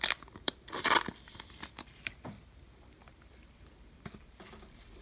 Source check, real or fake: fake